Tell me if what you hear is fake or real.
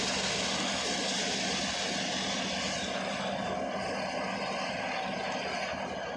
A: real